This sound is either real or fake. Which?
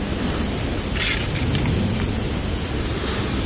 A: real